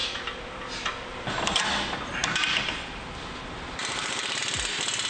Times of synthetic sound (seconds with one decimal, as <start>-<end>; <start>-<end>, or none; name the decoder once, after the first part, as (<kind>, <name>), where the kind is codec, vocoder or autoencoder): none